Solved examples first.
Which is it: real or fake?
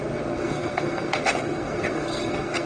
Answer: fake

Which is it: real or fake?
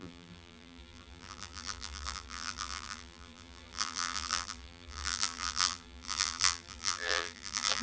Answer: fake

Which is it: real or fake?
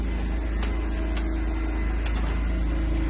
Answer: real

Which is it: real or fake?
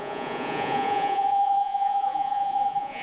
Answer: fake